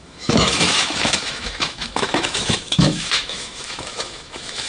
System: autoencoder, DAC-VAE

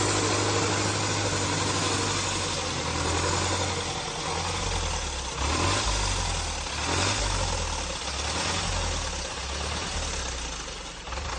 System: none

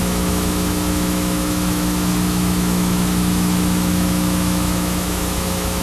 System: autoencoder, DAC-VAE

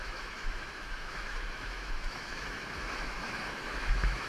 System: autoencoder, DAC-VAE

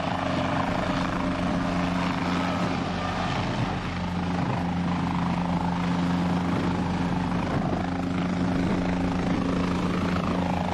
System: none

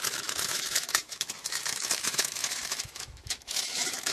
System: autoencoder, DAC-VAE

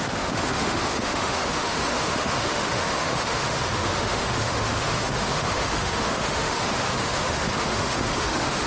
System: autoencoder, DAC-VAE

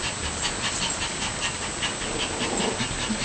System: none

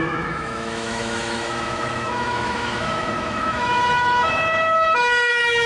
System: autoencoder, DAC-VAE